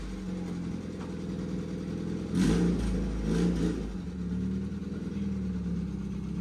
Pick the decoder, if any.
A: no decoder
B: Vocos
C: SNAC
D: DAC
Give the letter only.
A